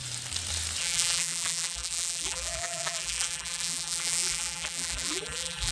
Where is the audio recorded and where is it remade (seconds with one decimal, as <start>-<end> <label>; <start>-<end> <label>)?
0.0-0.8 recorded; 0.8-5.7 remade